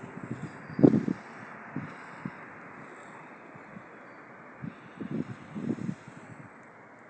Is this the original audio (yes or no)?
yes